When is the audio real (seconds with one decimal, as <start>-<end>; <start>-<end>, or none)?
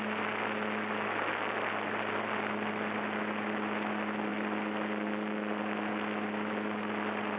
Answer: 0.0-7.4